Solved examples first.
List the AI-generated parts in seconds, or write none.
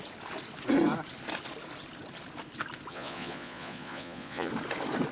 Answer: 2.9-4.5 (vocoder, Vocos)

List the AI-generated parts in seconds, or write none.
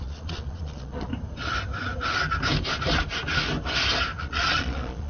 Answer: 0.0-1.1 (vocoder, Vocos); 4.2-5.1